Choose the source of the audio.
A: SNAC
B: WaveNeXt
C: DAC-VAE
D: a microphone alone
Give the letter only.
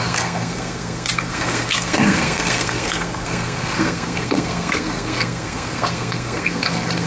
A